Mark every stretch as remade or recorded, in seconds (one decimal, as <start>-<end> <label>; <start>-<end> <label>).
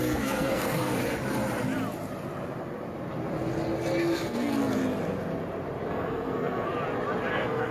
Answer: 0.0-1.0 remade; 1.0-4.0 recorded; 4.0-4.8 remade; 4.8-5.9 recorded; 5.9-6.7 remade; 6.7-7.3 recorded; 7.3-7.7 remade